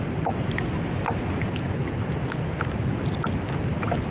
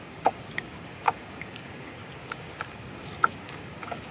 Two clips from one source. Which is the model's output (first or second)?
second